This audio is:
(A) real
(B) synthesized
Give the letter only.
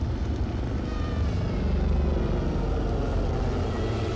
A